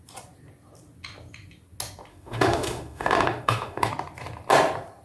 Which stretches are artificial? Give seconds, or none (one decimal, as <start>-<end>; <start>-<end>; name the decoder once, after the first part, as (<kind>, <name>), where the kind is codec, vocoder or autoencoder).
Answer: 2.1-3.9 (autoencoder, DAC-VAE)